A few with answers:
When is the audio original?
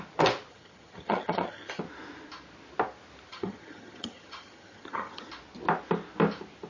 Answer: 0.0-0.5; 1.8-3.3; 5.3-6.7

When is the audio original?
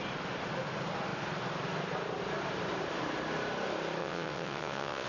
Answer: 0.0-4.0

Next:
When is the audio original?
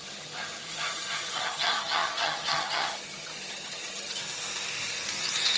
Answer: 4.2-5.6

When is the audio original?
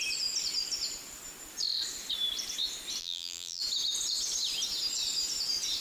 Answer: 0.0-3.0; 3.6-5.8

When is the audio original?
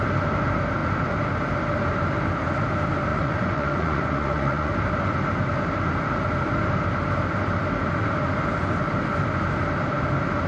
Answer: 0.0-3.1; 4.7-10.5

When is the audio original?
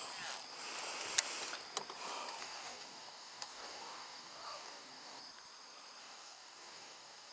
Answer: 0.0-2.4; 5.2-6.0